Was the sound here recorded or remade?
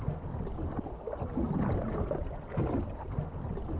recorded